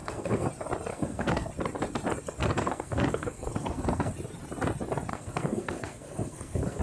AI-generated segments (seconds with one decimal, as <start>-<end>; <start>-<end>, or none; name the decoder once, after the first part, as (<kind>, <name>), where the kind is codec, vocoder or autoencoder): 0.0-0.5 (codec, SNAC); 0.9-1.5; 2.4-4.1; 5.1-6.8